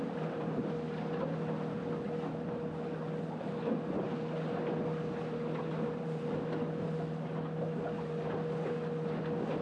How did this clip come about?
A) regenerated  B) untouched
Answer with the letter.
B